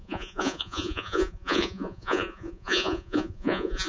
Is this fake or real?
fake